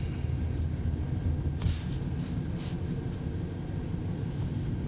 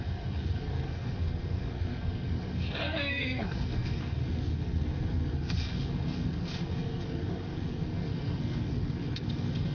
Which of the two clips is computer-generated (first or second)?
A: second